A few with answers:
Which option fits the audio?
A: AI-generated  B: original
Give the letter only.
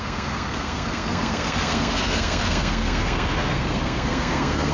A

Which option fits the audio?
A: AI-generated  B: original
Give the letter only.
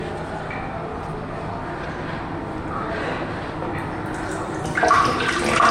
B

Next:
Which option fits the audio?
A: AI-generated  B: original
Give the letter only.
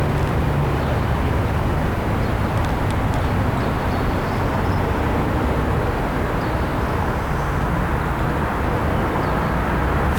B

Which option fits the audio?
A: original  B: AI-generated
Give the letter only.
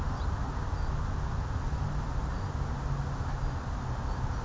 A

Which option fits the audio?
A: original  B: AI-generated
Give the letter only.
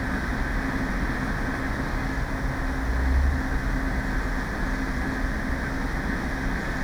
A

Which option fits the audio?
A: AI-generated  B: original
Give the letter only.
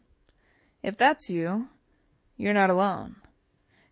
A